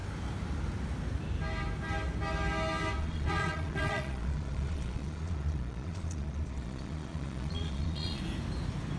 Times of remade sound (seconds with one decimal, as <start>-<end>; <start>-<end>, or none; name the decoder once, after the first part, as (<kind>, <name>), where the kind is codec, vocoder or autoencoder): 3.0-8.2 (vocoder, Vocos)